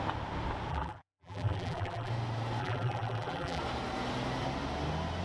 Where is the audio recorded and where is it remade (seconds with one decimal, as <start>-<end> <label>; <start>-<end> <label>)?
0.0-0.7 recorded; 0.7-2.1 remade; 2.1-2.6 recorded; 2.6-3.6 remade; 3.6-5.2 recorded